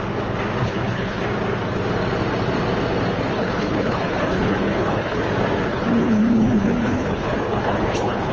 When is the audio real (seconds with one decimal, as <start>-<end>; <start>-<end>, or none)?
0.0-0.6; 1.2-3.3; 5.2-5.7